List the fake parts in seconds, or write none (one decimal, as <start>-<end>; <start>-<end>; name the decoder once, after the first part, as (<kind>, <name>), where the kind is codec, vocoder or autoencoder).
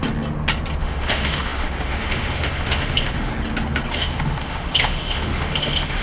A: 0.8-3.3 (autoencoder, DAC-VAE); 3.9-6.0